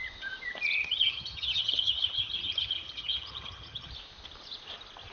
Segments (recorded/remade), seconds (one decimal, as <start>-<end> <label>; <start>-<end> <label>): 0.0-0.8 recorded; 0.8-3.9 remade; 3.9-5.1 recorded